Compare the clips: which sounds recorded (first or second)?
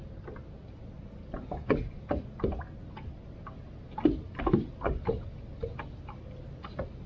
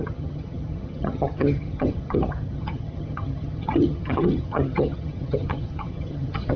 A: first